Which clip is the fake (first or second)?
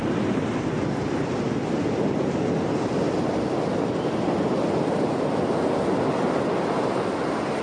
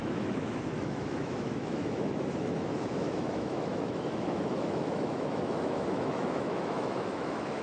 second